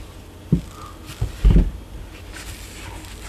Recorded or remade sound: recorded